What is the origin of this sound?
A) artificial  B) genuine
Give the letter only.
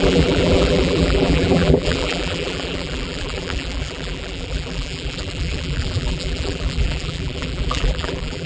A